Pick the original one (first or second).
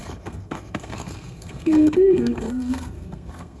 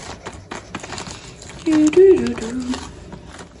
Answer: second